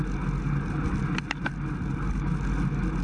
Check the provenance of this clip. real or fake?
real